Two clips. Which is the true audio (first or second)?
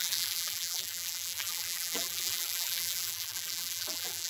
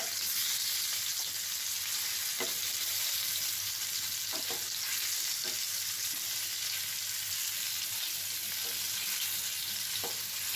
second